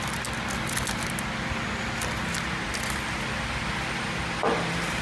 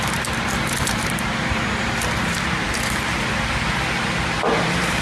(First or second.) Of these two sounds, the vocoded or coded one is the second